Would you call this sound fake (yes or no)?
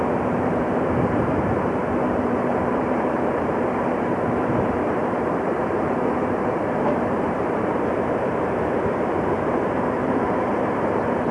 yes